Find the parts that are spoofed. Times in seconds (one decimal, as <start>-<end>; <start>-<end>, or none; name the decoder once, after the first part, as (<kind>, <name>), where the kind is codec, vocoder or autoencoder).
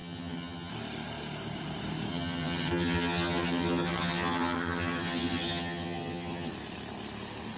0.0-0.7 (vocoder, HiFi-GAN); 2.1-6.5